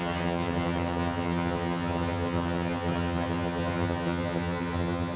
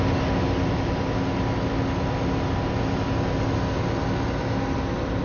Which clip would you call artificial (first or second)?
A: first